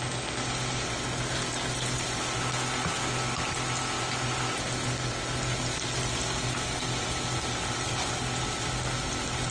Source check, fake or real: real